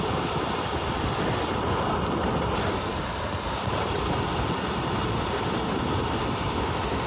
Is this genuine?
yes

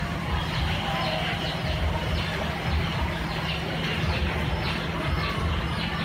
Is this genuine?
yes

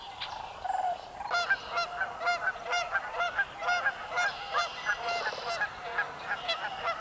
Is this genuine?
yes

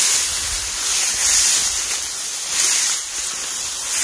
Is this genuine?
yes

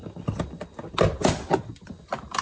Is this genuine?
no